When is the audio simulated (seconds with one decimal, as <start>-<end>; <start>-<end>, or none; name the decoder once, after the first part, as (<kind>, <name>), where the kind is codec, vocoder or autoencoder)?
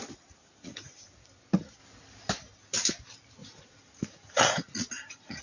0.4-1.0 (vocoder, Vocos); 3.4-5.4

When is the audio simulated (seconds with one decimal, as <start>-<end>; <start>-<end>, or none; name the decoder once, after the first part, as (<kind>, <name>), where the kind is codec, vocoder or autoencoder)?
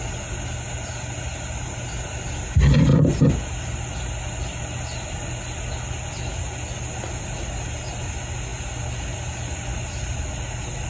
none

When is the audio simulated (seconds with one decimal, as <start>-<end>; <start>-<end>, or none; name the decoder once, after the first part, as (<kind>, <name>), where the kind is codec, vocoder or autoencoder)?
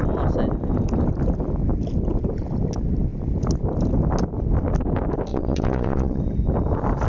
5.3-6.2 (vocoder, Vocos)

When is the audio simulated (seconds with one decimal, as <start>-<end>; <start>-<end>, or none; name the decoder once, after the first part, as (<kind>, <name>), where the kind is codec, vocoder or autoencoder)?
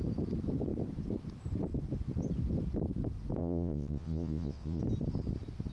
3.4-4.8 (vocoder, Vocos)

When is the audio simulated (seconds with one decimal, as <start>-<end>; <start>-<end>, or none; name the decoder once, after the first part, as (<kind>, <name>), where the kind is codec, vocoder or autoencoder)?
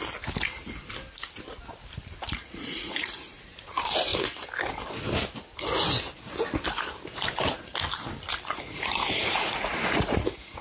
2.2-4.1 (vocoder, Vocos); 8.6-10.6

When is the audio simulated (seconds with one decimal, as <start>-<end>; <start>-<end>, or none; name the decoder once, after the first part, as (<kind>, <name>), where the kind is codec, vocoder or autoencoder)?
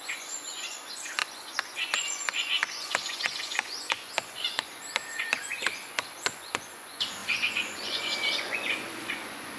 0.0-9.6 (vocoder, Vocos)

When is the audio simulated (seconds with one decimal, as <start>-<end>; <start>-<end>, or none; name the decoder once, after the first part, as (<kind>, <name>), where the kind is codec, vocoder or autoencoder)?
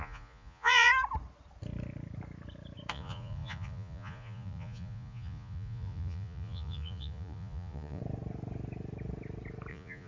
0.0-0.9 (vocoder, Vocos); 2.9-8.0; 9.7-10.1